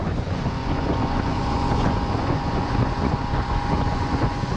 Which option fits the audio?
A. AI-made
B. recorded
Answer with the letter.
A